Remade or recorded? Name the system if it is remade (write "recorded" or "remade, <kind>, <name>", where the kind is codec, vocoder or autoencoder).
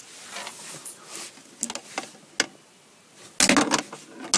recorded